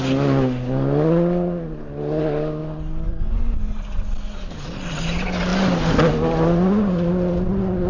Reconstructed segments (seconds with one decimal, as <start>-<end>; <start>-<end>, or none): none